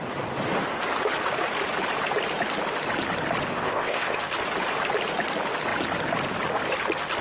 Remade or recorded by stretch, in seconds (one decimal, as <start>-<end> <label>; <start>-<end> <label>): 0.0-3.5 recorded; 3.5-4.2 remade; 4.2-7.2 recorded